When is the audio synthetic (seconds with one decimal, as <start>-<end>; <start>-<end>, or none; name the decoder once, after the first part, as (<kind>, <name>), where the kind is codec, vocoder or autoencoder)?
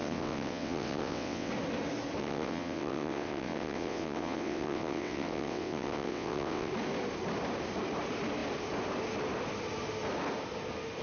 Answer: 0.0-1.5 (vocoder, WaveNeXt); 2.2-6.7